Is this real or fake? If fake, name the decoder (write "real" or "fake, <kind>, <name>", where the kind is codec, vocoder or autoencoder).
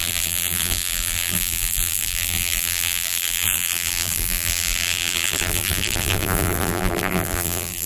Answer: fake, vocoder, BigVGAN v2